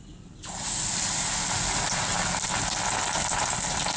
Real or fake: real